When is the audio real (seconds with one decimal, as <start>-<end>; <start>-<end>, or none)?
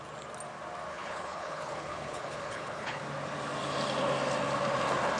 0.0-0.9; 3.0-5.2